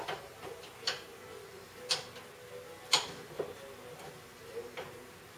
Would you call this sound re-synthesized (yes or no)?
no